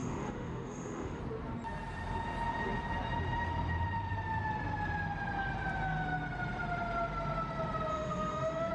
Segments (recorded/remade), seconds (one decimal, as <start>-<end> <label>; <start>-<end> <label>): 0.0-1.2 remade; 1.2-7.9 recorded; 7.9-8.7 remade